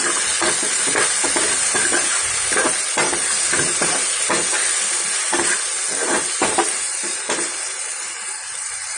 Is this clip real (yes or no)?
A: yes